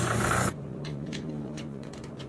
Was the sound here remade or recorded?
remade